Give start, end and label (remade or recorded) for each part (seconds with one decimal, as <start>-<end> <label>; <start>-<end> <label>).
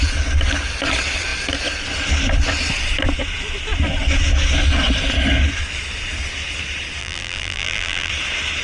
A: 0.0-7.0 recorded; 7.0-8.1 remade; 8.1-8.6 recorded